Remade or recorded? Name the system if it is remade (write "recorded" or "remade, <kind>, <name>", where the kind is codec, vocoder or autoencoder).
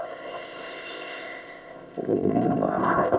remade, codec, ZipCodec